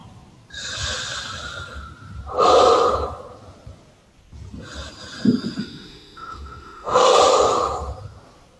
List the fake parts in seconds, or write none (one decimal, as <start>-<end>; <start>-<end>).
5.6-7.2